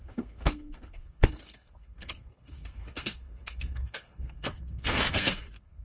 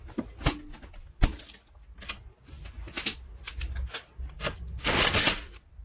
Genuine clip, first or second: second